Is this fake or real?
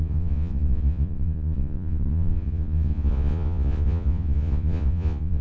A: fake